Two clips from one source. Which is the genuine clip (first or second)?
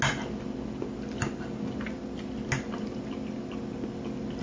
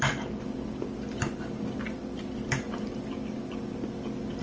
first